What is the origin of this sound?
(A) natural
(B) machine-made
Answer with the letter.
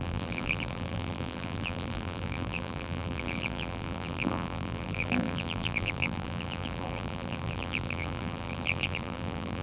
B